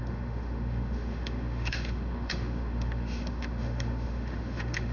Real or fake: fake